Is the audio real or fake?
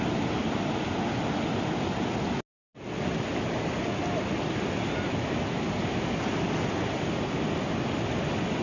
real